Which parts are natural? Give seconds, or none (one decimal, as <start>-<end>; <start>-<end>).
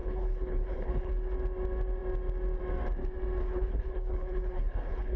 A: 1.1-3.4